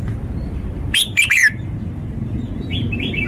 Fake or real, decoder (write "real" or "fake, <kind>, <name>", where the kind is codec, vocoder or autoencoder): fake, vocoder, BigVGAN v2